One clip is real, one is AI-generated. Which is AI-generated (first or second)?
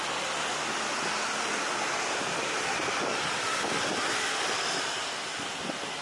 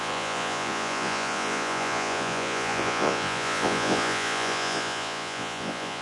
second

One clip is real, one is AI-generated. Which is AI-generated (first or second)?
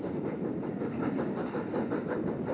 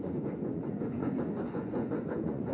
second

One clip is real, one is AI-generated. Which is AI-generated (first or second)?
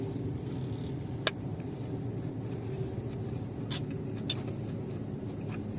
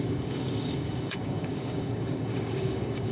second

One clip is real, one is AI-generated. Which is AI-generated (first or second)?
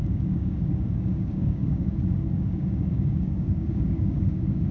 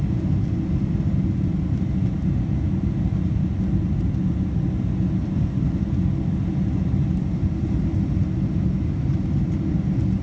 first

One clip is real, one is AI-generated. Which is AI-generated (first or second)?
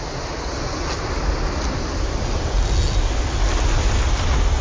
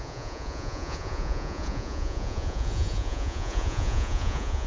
second